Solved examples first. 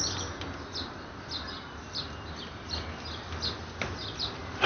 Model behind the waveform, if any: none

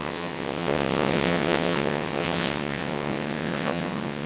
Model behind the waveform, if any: vocoder, WaveNeXt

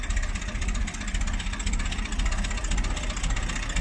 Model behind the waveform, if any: none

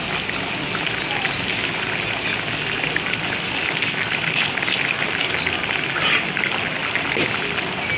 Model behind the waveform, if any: none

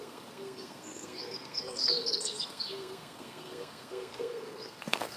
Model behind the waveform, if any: codec, SNAC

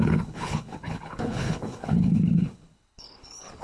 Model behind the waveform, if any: codec, HILCodec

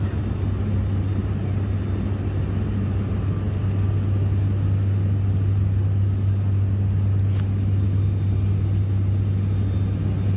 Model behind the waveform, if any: none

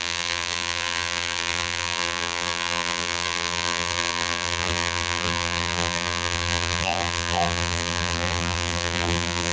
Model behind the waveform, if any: vocoder, BigVGAN v2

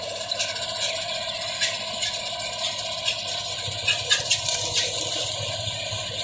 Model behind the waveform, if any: vocoder, BigVGAN v2